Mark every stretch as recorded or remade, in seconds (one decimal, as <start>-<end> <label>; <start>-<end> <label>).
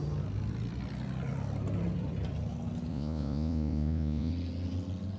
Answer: 0.0-2.9 recorded; 2.9-4.3 remade; 4.3-5.2 recorded